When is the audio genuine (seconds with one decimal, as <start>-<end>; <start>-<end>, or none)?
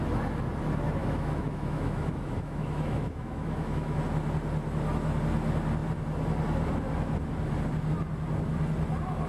0.0-1.0; 4.0-9.3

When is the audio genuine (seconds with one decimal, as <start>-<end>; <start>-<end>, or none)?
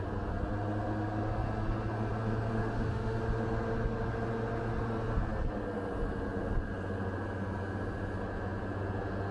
0.0-2.6; 3.2-9.3